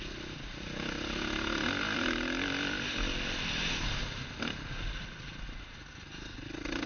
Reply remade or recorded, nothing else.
recorded